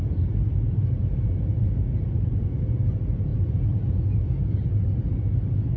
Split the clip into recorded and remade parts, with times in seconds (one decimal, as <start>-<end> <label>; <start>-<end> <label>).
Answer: 0.0-1.0 recorded; 1.0-2.6 remade; 2.6-3.3 recorded; 3.3-3.9 remade; 3.9-4.6 recorded; 4.6-5.1 remade; 5.1-5.8 recorded